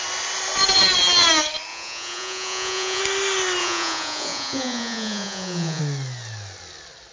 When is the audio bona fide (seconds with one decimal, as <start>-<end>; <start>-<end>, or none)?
0.0-1.7; 3.0-3.6; 5.8-7.1